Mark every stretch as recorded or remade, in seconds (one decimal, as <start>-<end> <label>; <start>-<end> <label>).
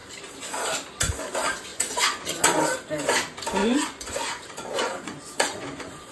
0.0-1.7 recorded; 1.7-2.6 remade; 2.6-3.6 recorded; 3.6-6.1 remade